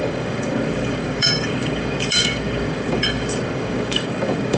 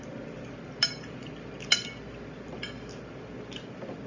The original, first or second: second